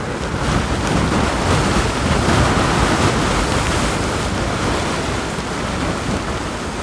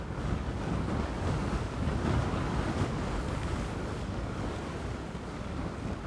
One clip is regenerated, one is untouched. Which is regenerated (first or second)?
second